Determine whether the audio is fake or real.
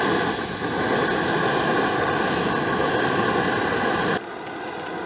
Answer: real